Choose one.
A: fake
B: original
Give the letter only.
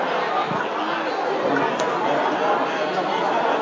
B